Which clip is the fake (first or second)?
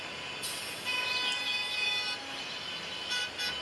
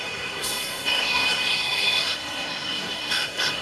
second